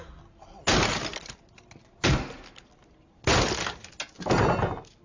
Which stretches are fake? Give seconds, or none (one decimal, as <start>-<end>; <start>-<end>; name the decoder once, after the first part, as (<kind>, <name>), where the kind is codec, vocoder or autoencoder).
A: none